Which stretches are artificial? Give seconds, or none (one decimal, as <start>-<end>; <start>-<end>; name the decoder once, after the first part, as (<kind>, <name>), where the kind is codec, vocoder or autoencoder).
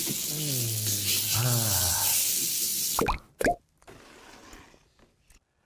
2.7-3.4 (vocoder, BigVGAN v2)